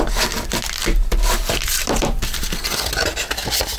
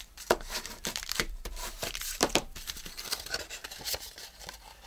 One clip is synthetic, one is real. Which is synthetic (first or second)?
second